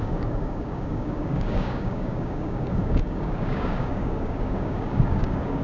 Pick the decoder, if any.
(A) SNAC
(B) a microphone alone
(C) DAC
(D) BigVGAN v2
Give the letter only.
C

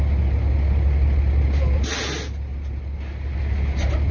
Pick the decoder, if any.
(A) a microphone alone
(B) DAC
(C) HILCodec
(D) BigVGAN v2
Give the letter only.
A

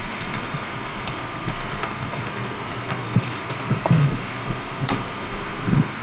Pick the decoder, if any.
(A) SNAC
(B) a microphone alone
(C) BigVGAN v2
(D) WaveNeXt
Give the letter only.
A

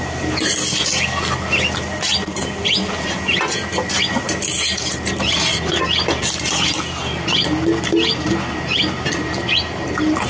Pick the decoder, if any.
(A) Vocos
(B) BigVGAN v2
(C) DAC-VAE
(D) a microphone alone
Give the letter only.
D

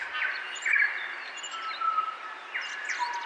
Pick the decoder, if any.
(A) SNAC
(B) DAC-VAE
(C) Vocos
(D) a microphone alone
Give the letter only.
D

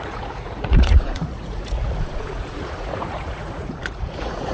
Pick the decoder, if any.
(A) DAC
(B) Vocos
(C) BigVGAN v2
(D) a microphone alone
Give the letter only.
B